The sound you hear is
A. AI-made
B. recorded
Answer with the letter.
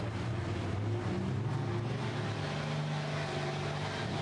B